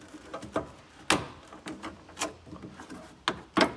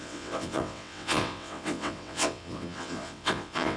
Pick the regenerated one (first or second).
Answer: second